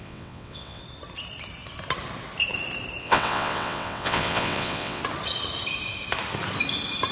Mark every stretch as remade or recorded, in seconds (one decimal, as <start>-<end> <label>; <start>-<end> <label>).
0.0-0.8 remade; 0.8-3.0 recorded; 3.0-5.0 remade; 5.0-7.1 recorded